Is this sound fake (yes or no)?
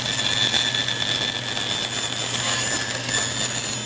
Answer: no